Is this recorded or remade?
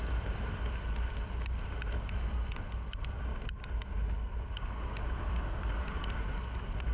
recorded